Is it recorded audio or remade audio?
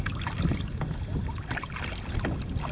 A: recorded